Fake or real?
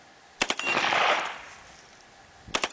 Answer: real